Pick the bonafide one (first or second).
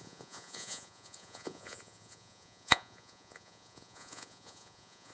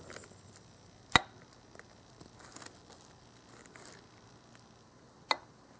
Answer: second